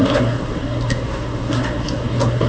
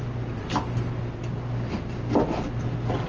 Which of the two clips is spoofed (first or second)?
first